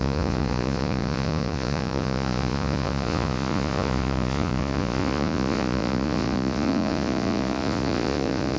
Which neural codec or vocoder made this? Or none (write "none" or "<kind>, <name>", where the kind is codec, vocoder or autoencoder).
vocoder, Vocos